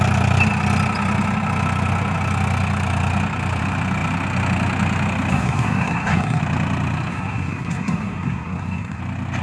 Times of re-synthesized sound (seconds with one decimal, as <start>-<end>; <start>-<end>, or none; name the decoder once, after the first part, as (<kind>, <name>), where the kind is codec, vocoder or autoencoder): 5.3-6.4 (codec, SNAC); 7.1-9.0